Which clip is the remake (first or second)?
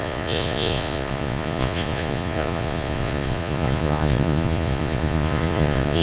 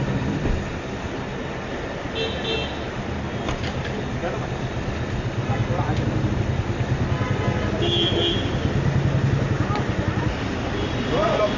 first